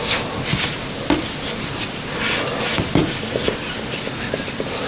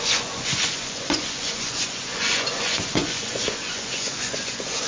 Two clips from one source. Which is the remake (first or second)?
second